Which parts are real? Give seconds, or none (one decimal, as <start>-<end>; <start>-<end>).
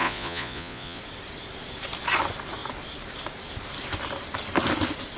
1.0-5.2